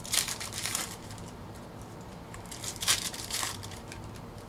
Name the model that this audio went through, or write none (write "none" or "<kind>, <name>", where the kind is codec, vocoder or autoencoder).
vocoder, BigVGAN v2